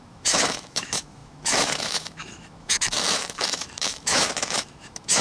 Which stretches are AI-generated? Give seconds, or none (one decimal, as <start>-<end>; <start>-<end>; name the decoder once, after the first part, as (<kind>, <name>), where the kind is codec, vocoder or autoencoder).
0.0-5.2 (autoencoder, DAC-VAE)